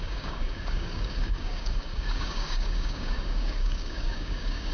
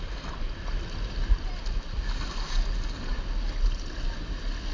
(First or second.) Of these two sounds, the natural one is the second